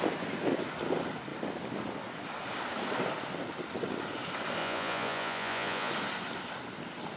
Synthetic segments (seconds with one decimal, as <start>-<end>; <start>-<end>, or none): 4.6-5.9